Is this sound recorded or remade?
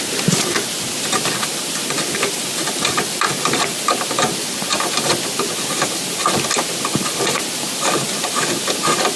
recorded